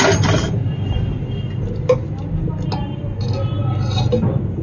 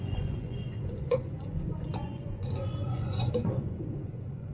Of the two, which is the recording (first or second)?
first